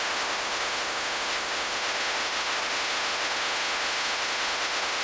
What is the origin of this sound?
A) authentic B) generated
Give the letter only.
B